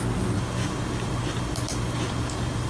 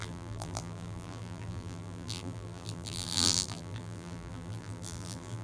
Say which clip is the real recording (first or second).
first